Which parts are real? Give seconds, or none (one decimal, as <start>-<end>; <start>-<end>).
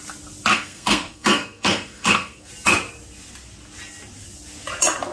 0.0-0.5; 2.5-5.1